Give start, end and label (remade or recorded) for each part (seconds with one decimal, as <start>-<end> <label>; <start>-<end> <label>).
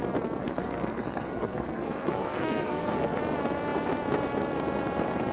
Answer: 0.0-0.4 recorded; 0.4-3.2 remade; 3.2-5.3 recorded